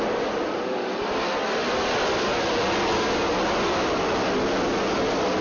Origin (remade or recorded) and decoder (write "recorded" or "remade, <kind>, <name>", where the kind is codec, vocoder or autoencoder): recorded